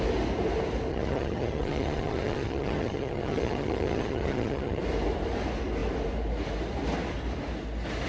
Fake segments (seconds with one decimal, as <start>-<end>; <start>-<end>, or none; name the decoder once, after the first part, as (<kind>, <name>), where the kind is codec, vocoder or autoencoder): 0.9-4.8 (vocoder, HiFi-GAN)

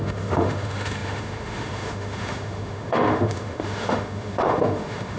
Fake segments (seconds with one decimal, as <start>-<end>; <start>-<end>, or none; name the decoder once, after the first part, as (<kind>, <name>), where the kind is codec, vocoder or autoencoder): 0.0-5.2 (autoencoder, DAC-VAE)

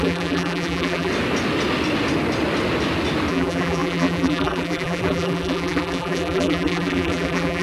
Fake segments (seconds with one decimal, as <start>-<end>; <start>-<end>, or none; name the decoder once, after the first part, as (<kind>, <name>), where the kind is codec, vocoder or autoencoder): 0.0-1.1 (vocoder, BigVGAN v2); 3.3-7.6